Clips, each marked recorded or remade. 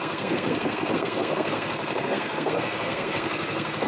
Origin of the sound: remade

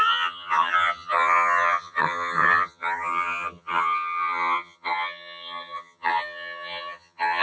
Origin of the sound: remade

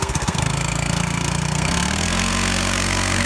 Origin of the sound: remade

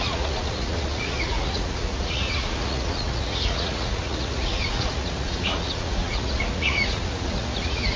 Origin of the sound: remade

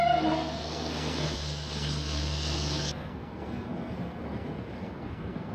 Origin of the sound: remade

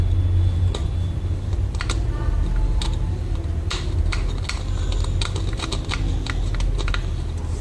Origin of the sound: recorded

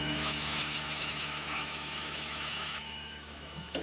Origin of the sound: remade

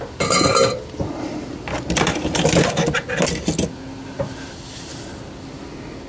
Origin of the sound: recorded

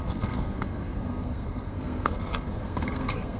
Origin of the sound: remade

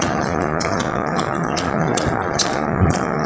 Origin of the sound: remade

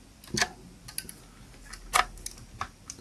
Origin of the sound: recorded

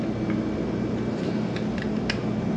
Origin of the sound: recorded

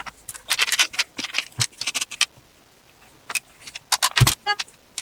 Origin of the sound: recorded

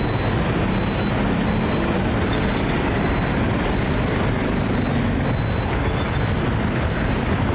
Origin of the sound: recorded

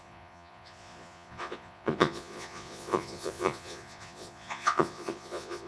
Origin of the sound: remade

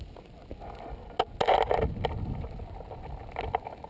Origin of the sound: recorded